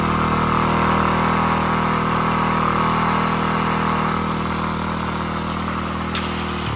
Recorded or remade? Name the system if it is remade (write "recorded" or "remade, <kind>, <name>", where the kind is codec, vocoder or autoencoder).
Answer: recorded